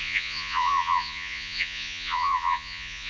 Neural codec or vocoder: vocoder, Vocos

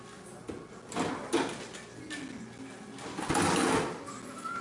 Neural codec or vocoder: none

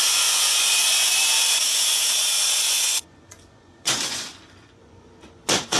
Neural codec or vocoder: vocoder, Vocos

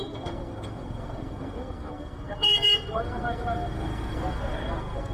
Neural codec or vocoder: codec, SNAC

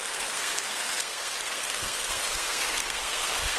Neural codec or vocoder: codec, SNAC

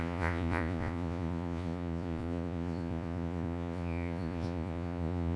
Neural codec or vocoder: vocoder, Vocos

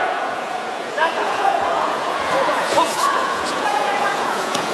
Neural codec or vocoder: vocoder, Vocos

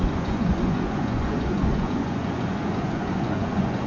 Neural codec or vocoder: vocoder, Vocos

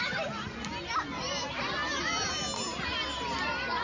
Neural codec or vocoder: none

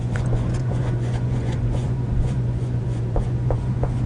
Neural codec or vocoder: vocoder, Vocos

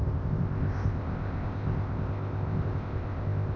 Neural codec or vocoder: codec, ZipCodec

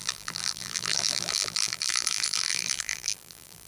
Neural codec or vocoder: vocoder, BigVGAN v2